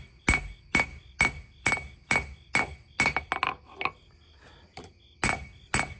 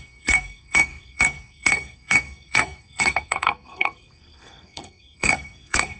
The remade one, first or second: second